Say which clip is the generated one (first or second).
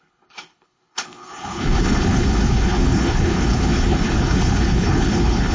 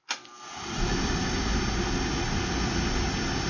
first